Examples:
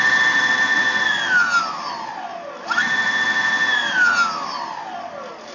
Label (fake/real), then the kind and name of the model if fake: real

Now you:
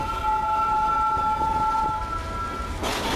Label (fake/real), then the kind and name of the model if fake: real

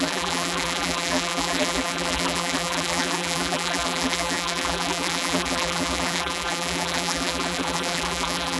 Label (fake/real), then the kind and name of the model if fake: fake, vocoder, BigVGAN v2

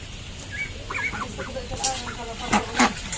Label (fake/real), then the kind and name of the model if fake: real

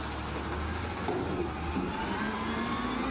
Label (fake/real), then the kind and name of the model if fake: real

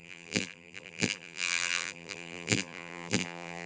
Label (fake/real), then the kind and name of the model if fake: fake, vocoder, BigVGAN v2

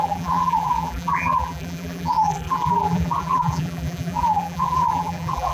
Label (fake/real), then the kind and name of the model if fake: fake, vocoder, BigVGAN v2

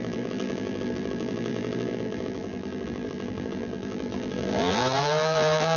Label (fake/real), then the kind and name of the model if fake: fake, vocoder, BigVGAN v2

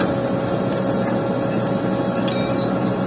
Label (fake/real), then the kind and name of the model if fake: real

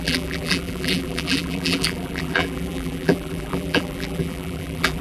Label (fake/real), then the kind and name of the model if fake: fake, vocoder, BigVGAN v2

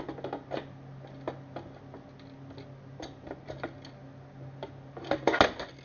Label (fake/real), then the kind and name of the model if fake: real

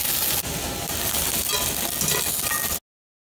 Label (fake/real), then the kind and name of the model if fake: real